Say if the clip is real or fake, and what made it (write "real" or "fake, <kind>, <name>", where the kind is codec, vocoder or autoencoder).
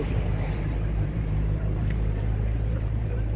fake, vocoder, BigVGAN v2